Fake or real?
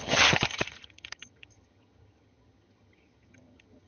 fake